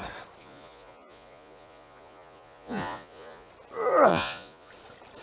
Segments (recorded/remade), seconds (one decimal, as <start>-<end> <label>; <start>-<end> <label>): 0.0-0.4 recorded; 0.4-3.5 remade; 3.5-4.1 recorded; 4.1-4.7 remade; 4.7-5.2 recorded